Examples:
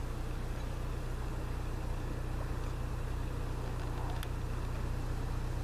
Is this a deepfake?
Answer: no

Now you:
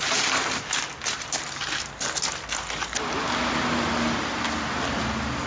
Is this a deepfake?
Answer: no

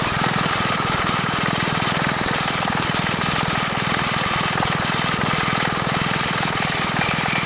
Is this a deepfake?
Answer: no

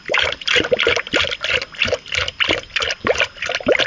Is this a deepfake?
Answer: no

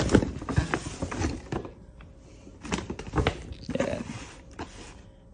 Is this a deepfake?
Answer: no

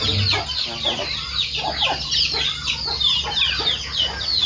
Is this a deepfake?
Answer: no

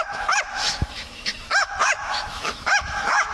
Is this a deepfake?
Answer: yes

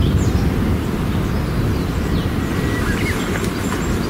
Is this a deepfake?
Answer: no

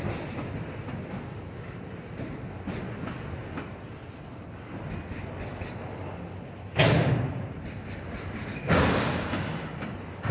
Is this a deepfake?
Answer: no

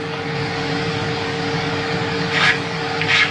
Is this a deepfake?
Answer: yes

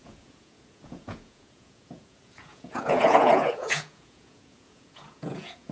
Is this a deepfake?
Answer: yes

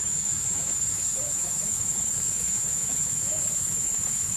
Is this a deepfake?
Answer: yes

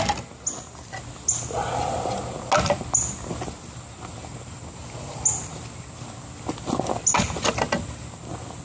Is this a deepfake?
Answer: no